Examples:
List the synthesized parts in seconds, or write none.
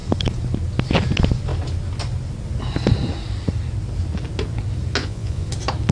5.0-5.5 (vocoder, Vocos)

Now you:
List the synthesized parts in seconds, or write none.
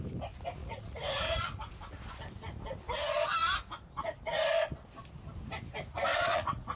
0.6-1.7 (vocoder, Vocos); 6.1-6.8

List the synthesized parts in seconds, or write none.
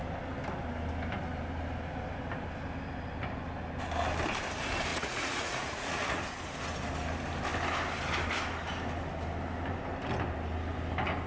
4.9-6.2 (vocoder, Vocos)